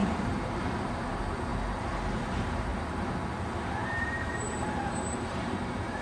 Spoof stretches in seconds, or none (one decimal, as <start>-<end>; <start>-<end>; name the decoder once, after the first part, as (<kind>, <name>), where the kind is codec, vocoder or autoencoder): 0.0-1.5 (vocoder, BigVGAN v2); 2.1-2.7; 3.9-6.0